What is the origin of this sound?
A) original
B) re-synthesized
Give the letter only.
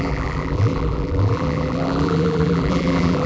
B